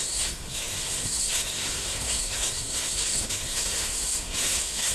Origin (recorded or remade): remade